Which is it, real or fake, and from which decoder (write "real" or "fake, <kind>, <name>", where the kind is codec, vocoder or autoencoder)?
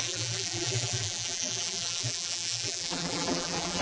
fake, vocoder, BigVGAN v2